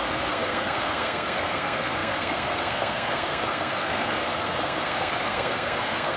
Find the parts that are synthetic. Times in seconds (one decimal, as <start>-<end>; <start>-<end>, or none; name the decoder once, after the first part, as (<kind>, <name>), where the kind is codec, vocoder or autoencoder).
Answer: 0.0-6.2 (codec, SNAC)